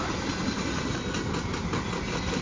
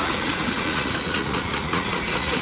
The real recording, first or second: first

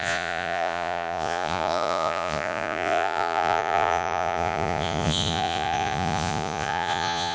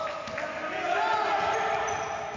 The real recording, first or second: second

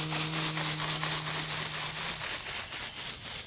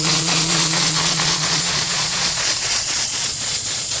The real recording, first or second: first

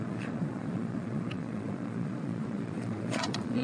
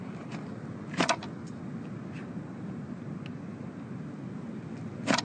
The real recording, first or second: second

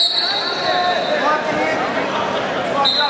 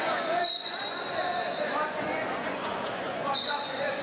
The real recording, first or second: first